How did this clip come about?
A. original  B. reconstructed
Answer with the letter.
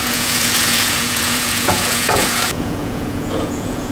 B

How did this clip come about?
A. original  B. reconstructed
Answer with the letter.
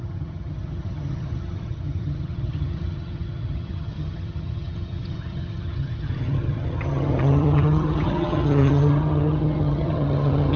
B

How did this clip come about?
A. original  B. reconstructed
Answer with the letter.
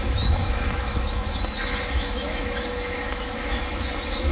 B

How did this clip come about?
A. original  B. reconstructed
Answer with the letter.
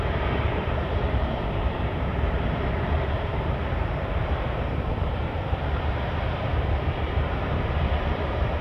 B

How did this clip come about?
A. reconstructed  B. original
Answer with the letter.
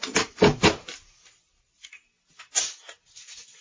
B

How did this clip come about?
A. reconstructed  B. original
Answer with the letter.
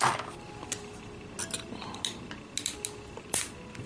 B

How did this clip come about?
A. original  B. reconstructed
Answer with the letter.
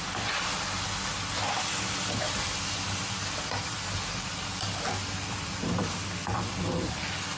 A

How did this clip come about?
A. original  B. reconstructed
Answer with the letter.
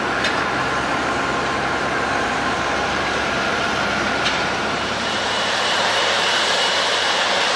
B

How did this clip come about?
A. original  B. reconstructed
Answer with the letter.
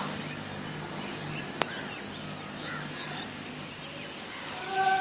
A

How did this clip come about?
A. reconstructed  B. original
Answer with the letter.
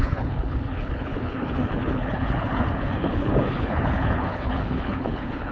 A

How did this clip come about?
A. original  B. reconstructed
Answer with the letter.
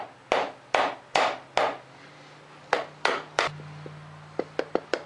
A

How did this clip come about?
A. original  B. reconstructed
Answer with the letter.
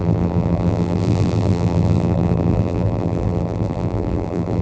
B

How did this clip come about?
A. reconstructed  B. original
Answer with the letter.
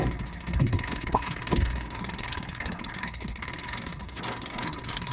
A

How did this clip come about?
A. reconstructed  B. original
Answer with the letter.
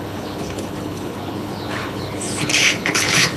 A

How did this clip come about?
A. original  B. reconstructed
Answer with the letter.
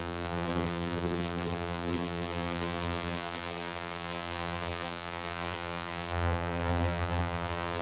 B